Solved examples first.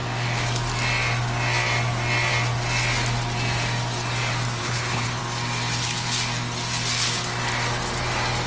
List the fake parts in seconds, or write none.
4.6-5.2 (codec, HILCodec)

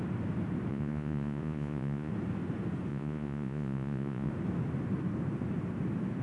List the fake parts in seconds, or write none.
0.7-2.1 (vocoder, Vocos); 2.9-4.3

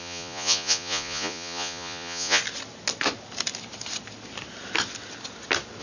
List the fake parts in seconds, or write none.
0.0-2.4 (vocoder, Vocos)

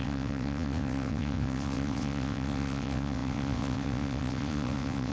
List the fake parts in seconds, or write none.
0.0-5.1 (vocoder, WaveNeXt)

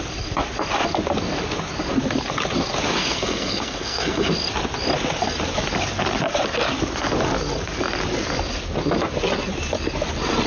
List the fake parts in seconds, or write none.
3.0-4.3 (codec, SNAC)

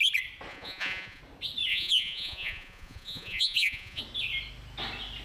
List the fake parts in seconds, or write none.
0.5-1.2 (vocoder, Vocos); 1.7-4.0

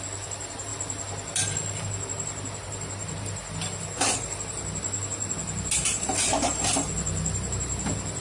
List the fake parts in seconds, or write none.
none